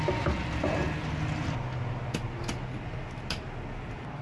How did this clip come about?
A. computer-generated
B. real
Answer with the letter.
B